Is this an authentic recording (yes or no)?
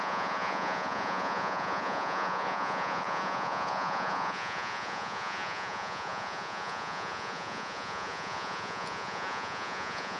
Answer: no